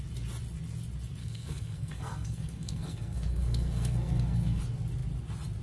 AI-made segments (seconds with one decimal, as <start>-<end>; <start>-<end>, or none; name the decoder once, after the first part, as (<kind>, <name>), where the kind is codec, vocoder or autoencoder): 1.2-4.6 (codec, SNAC)